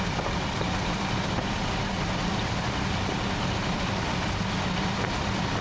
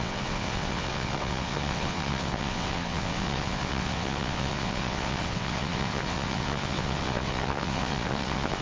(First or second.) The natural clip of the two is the first